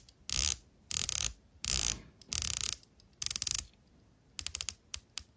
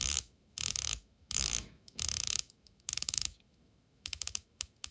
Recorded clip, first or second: first